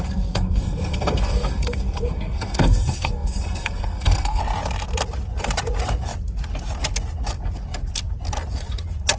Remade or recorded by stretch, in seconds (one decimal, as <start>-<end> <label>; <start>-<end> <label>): 0.0-4.4 remade; 4.4-9.2 recorded